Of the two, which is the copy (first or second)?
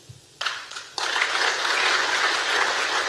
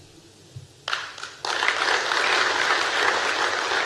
first